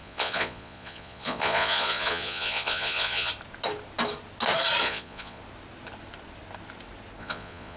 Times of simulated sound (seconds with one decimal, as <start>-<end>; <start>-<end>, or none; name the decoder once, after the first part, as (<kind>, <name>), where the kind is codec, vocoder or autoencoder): 0.0-3.3 (vocoder, Vocos); 4.8-5.4; 7.2-7.8